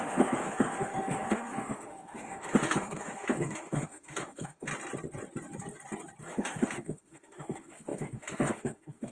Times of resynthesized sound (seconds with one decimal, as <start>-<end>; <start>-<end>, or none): 0.0-4.7; 6.2-9.1